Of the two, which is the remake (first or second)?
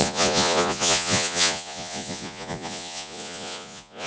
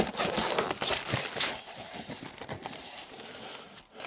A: first